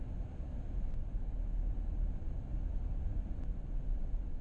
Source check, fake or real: real